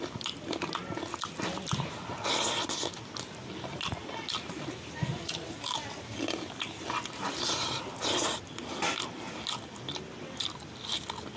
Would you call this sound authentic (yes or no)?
yes